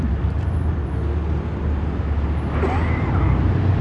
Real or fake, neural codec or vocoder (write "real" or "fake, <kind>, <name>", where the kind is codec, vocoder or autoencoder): real